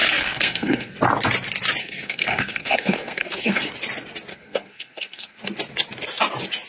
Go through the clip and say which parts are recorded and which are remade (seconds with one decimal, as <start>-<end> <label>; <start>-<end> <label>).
0.0-1.0 remade; 1.0-1.8 recorded; 1.8-3.7 remade; 3.7-4.3 recorded; 4.3-5.4 remade; 5.4-6.7 recorded